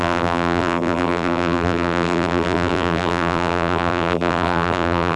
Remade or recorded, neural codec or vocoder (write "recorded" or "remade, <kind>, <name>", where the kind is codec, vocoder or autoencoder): remade, vocoder, BigVGAN v2